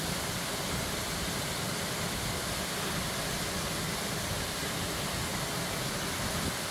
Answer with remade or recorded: recorded